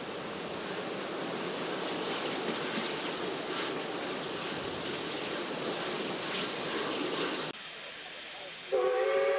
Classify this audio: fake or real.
real